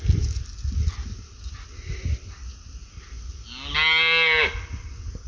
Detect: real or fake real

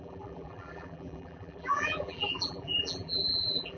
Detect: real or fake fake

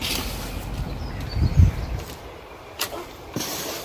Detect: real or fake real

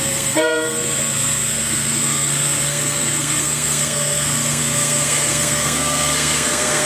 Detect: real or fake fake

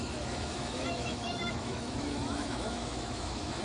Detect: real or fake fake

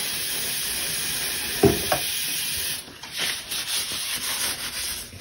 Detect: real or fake fake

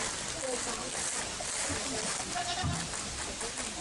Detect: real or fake real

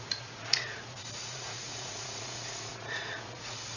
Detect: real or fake fake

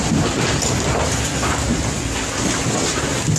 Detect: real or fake real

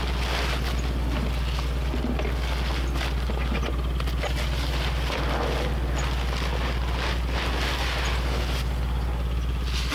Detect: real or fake real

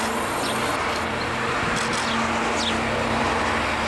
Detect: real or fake real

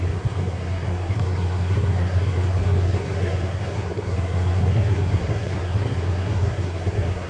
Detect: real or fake fake